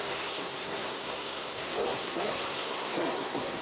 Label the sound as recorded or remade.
remade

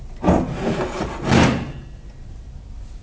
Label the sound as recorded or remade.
recorded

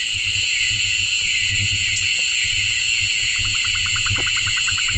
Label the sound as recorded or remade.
remade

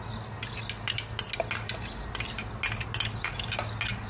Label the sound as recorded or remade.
recorded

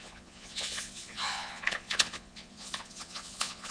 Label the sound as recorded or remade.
remade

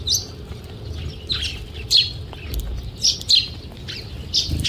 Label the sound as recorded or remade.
recorded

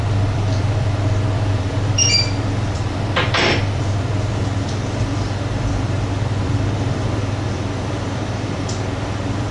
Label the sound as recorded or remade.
remade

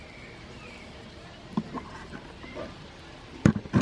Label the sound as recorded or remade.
recorded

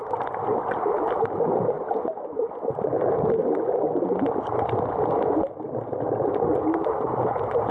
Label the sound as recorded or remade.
recorded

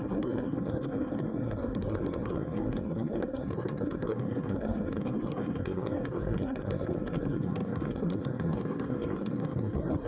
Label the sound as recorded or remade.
remade